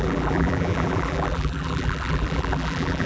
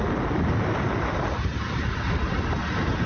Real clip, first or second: second